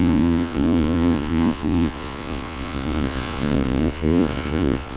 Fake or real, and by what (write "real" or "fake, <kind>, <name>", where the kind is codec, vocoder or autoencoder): fake, vocoder, Vocos